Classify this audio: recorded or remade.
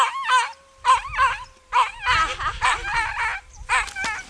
recorded